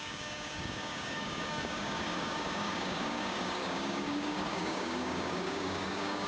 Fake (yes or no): yes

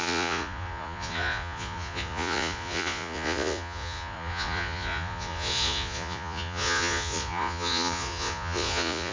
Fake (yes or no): yes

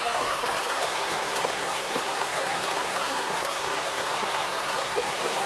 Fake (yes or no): yes